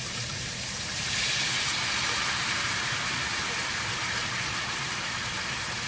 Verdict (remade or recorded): remade